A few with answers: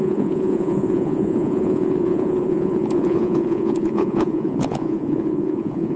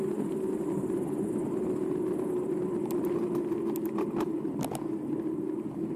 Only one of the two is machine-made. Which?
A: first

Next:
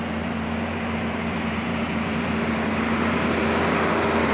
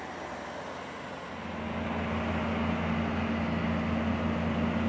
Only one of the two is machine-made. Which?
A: first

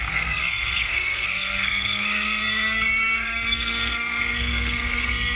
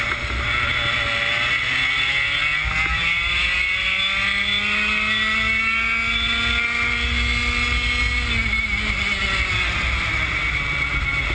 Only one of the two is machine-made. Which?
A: first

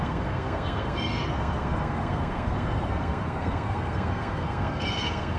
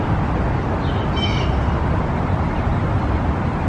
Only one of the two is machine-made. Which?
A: first